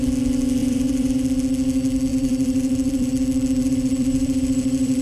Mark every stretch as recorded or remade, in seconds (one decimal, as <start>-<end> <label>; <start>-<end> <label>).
0.0-0.6 recorded; 0.6-1.2 remade; 1.2-2.1 recorded; 2.1-3.1 remade; 3.1-3.6 recorded; 3.6-5.0 remade